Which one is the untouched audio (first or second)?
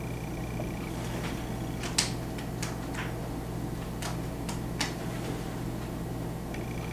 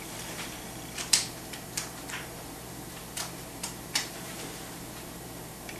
first